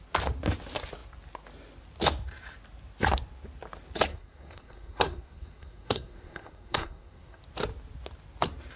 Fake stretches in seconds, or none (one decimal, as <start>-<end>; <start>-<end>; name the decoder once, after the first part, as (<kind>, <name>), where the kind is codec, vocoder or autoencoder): 4.1-7.4 (codec, SNAC)